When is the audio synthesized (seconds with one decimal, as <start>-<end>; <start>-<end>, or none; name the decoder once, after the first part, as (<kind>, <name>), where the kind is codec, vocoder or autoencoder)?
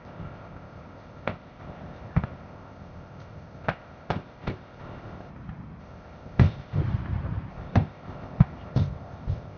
0.0-5.3 (codec, ZipCodec); 5.8-6.8; 7.5-9.6